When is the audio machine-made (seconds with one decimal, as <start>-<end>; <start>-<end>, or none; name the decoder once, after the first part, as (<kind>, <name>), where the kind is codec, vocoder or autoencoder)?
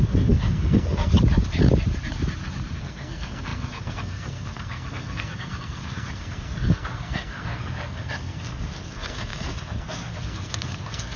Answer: 0.0-1.1 (codec, SNAC); 2.8-11.2